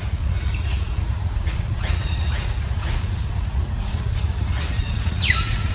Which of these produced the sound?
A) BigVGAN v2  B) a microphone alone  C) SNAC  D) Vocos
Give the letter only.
D